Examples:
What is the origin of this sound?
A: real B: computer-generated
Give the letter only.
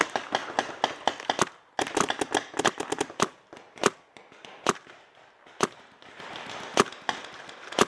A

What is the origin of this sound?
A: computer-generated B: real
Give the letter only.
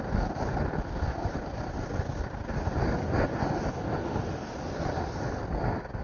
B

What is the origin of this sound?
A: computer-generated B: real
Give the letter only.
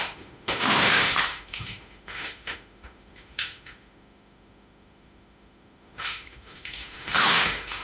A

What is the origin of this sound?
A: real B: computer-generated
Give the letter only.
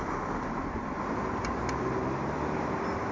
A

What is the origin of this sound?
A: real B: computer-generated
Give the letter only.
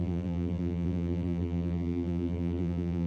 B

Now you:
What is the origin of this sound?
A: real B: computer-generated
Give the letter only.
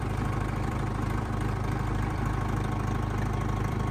B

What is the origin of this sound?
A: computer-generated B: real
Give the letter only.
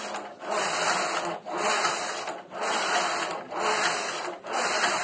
B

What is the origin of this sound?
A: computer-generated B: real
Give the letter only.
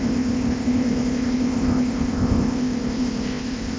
A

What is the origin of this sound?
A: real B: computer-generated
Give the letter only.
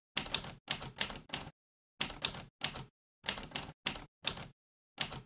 A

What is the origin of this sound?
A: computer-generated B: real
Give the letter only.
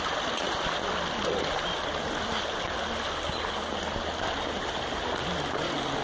B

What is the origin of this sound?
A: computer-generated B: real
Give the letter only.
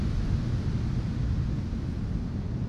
B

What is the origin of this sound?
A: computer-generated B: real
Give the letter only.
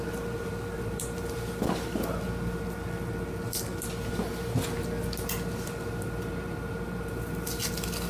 B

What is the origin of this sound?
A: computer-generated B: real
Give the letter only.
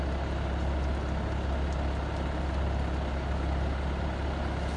B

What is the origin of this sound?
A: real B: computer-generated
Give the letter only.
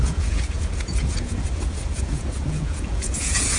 B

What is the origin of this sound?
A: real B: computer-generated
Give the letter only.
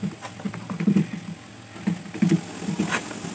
A